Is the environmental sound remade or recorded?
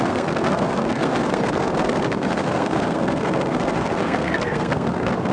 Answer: remade